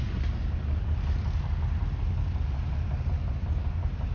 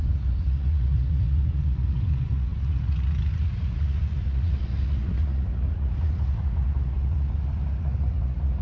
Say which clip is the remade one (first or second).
second